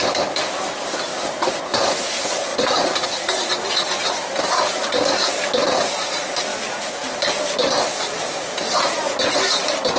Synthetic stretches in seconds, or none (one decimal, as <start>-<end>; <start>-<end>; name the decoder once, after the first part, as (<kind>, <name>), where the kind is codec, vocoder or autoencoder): 2.5-3.5 (vocoder, Vocos)